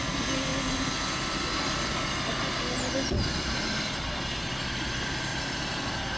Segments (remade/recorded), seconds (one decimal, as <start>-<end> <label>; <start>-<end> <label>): 0.0-5.3 recorded; 5.3-6.2 remade